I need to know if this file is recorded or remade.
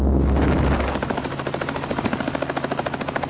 recorded